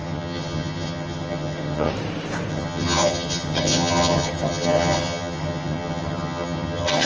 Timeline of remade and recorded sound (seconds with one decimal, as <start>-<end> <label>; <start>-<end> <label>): 0.0-1.9 remade; 1.9-2.5 recorded; 2.5-7.1 remade